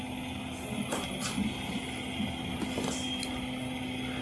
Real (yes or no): yes